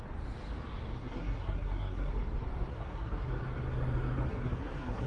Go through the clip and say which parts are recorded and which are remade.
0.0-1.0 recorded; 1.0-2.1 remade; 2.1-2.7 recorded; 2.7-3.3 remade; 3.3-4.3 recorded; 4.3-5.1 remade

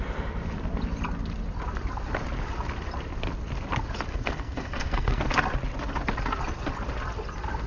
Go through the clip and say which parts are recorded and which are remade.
0.0-4.1 recorded; 4.1-5.2 remade; 5.2-7.7 recorded

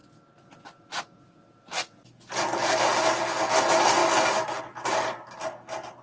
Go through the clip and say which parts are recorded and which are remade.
0.0-6.0 recorded

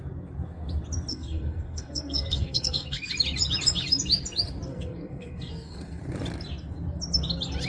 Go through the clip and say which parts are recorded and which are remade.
0.0-1.1 recorded; 1.1-3.1 remade; 3.1-4.7 recorded; 4.7-6.0 remade; 6.0-7.7 recorded

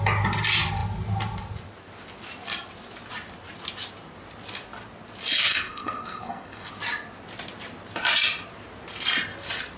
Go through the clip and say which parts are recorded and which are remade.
0.0-5.5 recorded; 5.5-6.7 remade; 6.7-9.8 recorded

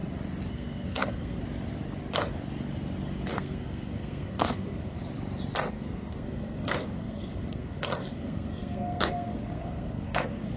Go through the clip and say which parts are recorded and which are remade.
0.0-0.5 recorded; 0.5-1.4 remade; 1.4-3.3 recorded; 3.3-5.0 remade; 5.0-5.7 recorded; 5.7-10.6 remade

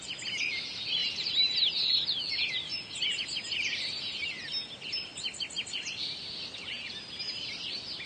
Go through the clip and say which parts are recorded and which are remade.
0.0-8.1 recorded

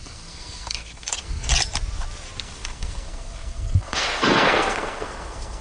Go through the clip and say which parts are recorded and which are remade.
0.0-1.5 remade; 1.5-2.4 recorded; 2.4-5.6 remade